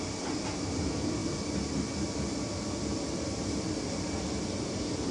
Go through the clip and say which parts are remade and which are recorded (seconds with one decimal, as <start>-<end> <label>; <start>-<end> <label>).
0.0-5.1 recorded